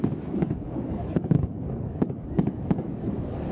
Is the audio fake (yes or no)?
yes